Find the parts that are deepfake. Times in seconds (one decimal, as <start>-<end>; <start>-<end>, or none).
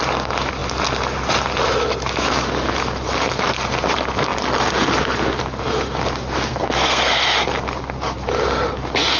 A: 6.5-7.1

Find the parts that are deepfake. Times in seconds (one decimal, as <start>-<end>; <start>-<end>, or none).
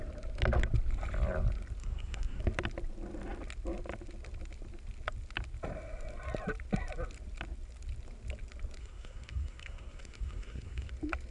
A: 1.8-2.4; 8.8-10.9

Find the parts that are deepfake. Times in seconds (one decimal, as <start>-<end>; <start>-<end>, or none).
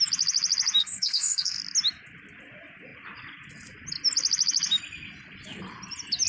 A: 0.8-1.6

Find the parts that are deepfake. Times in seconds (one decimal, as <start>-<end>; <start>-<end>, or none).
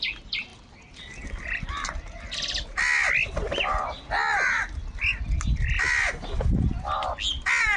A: none